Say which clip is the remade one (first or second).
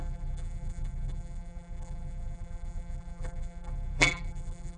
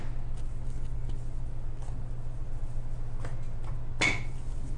first